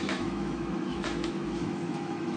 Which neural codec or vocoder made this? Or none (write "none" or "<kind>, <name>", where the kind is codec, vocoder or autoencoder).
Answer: autoencoder, DAC-VAE